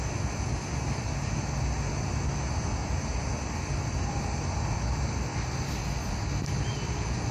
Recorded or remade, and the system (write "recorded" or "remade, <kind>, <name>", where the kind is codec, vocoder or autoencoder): recorded